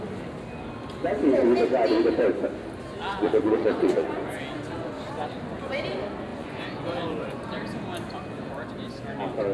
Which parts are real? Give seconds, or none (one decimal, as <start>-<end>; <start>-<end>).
0.0-3.1; 4.4-6.3; 7.6-9.5